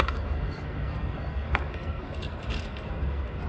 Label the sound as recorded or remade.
remade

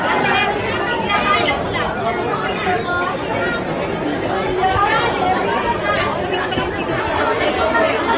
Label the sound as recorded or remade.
recorded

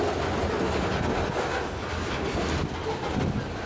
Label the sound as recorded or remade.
recorded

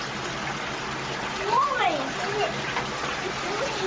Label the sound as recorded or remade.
recorded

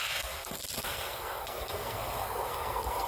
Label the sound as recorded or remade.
remade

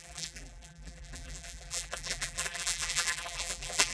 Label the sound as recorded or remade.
remade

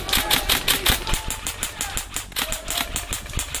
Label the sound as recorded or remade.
recorded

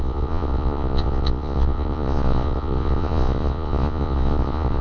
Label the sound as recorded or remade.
remade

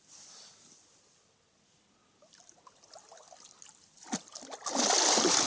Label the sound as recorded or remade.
recorded